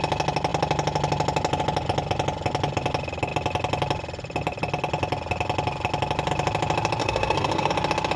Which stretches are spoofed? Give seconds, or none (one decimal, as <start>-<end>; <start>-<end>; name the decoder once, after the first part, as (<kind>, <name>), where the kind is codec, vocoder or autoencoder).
7.0-7.7 (codec, SNAC)